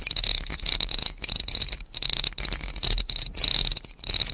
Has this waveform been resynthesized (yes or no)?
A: no